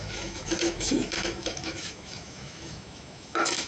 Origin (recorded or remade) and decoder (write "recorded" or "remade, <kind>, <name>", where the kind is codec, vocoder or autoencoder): remade, autoencoder, DAC-VAE